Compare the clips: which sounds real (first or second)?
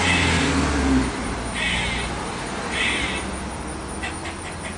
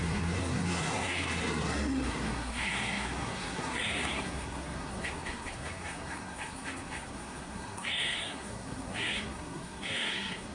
first